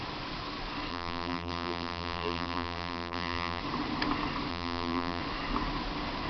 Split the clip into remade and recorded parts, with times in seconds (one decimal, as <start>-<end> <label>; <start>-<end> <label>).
0.0-0.9 recorded; 0.9-3.6 remade; 3.6-4.5 recorded; 4.5-5.2 remade; 5.2-6.3 recorded